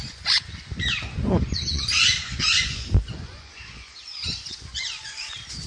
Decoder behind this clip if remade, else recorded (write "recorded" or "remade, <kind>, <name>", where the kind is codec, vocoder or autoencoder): remade, vocoder, Vocos